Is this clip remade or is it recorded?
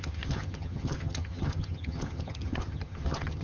remade